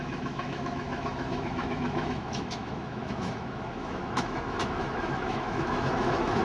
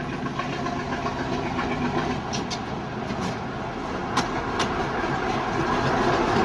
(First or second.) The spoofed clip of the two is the first